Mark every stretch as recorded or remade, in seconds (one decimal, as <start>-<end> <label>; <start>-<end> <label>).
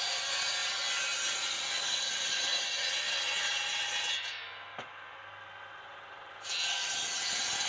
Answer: 0.0-7.7 recorded